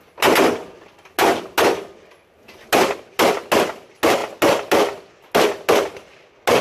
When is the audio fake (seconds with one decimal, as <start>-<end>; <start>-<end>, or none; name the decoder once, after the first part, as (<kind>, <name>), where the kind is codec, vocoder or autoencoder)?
none